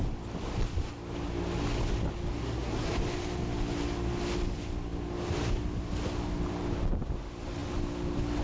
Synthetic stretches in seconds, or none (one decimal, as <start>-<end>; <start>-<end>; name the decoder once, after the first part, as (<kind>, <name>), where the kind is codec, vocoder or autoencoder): 2.4-2.9 (codec, SNAC)